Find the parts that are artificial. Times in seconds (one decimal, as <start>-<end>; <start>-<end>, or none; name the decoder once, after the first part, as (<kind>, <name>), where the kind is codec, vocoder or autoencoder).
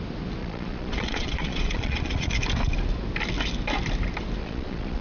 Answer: 0.4-2.3 (vocoder, Vocos); 4.4-5.0